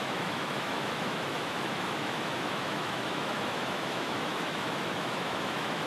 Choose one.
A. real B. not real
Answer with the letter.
B